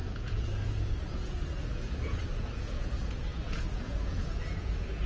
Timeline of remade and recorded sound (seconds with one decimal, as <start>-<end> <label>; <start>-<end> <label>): 0.0-5.1 remade